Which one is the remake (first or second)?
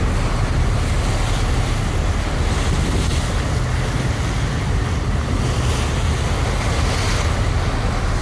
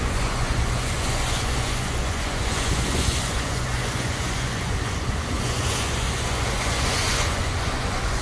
second